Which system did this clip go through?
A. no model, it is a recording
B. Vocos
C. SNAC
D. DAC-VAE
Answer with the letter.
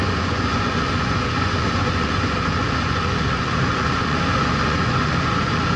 B